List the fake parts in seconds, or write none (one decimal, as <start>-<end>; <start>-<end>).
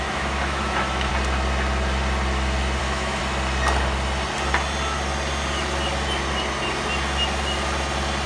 0.0-1.1; 2.8-3.2